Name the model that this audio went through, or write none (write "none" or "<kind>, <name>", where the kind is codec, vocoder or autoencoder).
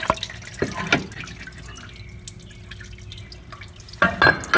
none